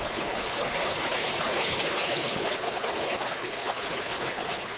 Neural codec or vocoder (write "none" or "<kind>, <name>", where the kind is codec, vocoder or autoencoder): codec, HILCodec